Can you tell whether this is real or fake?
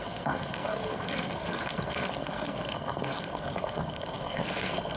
fake